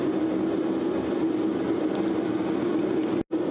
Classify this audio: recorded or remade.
recorded